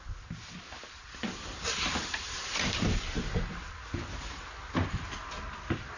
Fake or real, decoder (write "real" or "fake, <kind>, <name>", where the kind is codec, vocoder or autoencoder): fake, vocoder, BigVGAN v2